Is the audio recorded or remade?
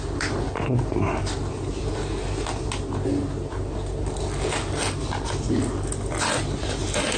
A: recorded